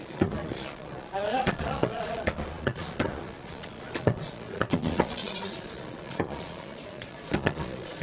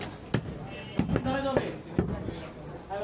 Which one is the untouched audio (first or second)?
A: second